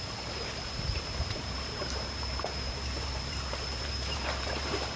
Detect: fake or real fake